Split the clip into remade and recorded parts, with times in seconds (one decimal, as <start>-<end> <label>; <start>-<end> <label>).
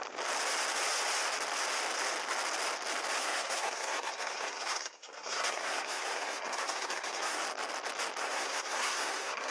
0.0-3.2 recorded; 3.2-7.4 remade; 7.4-8.2 recorded; 8.2-9.5 remade